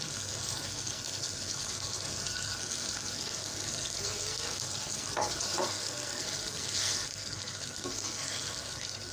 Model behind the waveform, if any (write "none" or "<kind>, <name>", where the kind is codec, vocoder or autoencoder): codec, SNAC